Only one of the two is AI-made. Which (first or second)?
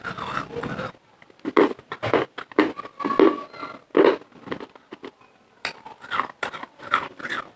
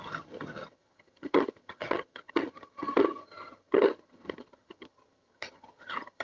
second